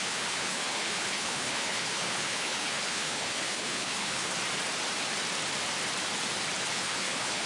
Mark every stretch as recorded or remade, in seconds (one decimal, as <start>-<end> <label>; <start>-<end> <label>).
0.0-4.3 remade; 4.3-6.7 recorded; 6.7-7.5 remade

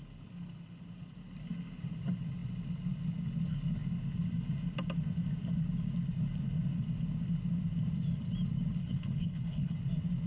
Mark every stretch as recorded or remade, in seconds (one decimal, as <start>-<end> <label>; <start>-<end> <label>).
0.0-8.8 recorded; 8.8-9.8 remade; 9.8-10.3 recorded